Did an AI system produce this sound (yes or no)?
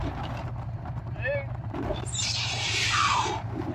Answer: yes